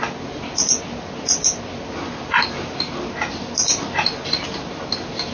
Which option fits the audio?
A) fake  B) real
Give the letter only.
B